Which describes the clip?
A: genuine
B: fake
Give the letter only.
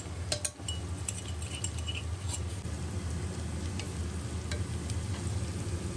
A